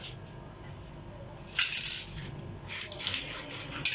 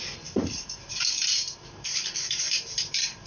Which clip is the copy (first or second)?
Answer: second